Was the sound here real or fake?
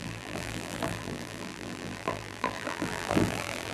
fake